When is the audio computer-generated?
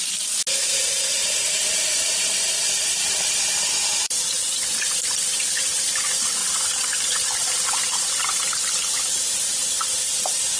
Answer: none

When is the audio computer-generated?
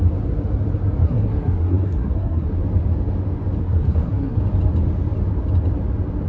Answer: 1.0-2.5 (codec, SNAC); 3.6-4.4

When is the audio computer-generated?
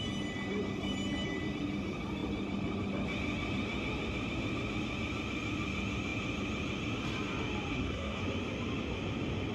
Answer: 7.7-8.2 (codec, SNAC)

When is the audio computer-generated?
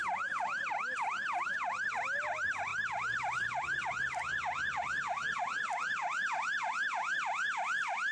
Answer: none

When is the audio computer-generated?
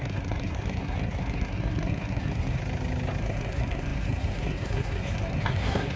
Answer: 0.0-2.6 (codec, SNAC); 3.2-6.0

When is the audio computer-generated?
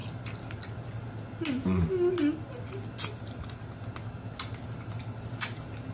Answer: none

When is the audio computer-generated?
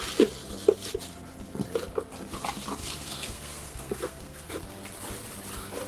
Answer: 2.8-4.5 (codec, SNAC)